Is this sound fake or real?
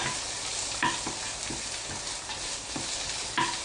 real